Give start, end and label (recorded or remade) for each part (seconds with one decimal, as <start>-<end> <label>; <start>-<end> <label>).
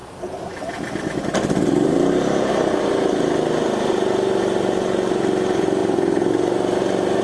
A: 0.0-7.2 recorded